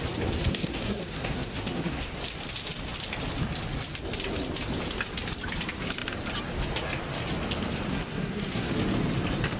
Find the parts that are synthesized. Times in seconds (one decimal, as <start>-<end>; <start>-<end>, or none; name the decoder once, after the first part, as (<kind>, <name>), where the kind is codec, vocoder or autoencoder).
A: 0.4-2.1 (codec, SNAC); 7.9-8.7